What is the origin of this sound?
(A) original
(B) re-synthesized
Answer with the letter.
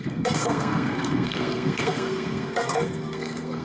B